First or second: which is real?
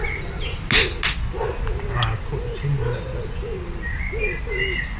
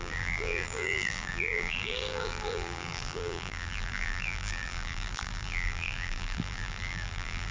first